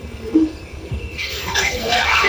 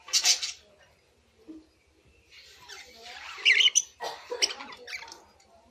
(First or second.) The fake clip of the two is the first